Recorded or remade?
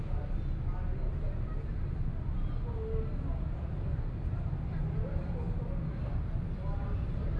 recorded